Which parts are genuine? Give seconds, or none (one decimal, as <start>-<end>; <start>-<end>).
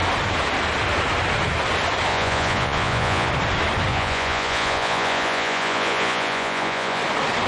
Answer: 0.0-2.1; 3.3-3.9; 7.0-7.5